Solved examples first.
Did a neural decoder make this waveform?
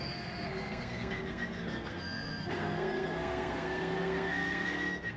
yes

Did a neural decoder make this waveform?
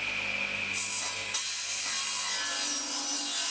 no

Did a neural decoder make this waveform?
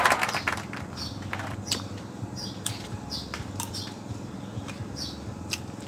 yes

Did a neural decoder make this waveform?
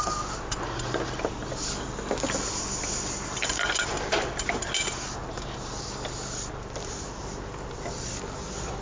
no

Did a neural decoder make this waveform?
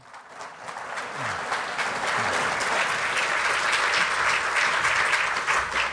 no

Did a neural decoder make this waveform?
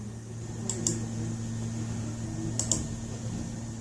no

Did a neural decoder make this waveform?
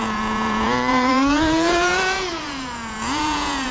yes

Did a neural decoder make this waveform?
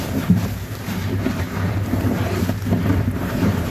yes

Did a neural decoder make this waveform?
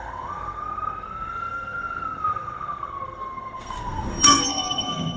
yes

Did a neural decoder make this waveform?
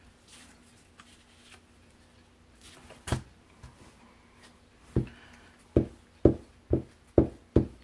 no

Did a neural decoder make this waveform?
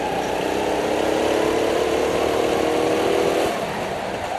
no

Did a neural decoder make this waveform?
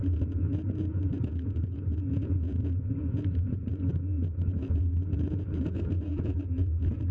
yes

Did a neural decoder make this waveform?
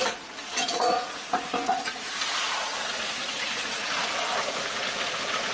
yes